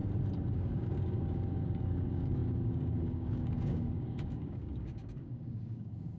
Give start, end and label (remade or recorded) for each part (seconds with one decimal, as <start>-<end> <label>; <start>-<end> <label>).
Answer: 0.0-0.5 recorded; 0.5-6.2 remade